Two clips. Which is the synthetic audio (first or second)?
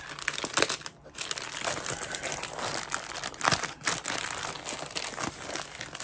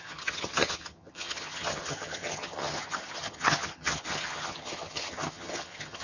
second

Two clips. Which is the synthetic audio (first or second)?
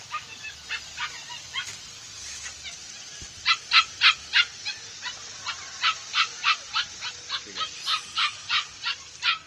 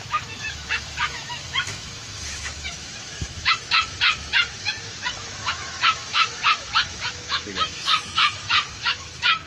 second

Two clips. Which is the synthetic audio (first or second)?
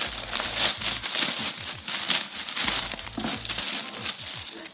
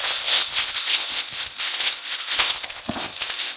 second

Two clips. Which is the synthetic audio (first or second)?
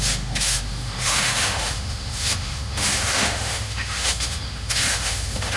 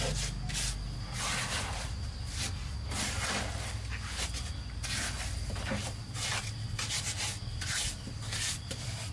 first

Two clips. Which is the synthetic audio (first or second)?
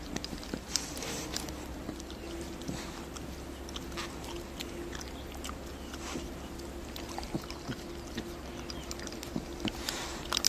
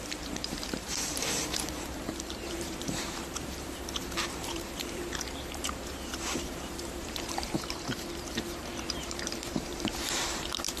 second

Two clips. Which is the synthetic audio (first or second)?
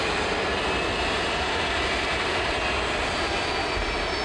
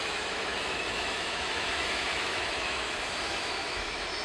second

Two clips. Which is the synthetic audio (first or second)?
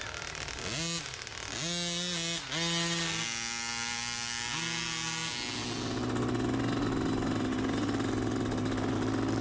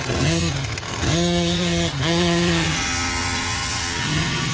second